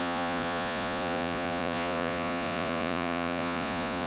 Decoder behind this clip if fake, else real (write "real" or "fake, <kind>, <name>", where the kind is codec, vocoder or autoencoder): fake, vocoder, Vocos